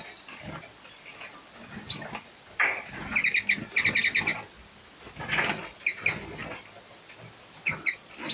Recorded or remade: recorded